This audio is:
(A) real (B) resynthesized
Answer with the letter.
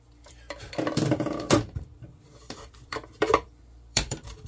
B